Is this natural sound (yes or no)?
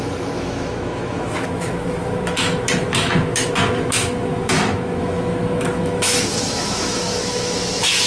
no